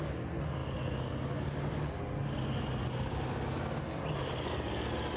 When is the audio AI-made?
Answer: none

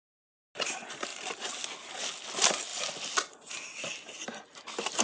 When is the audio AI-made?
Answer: none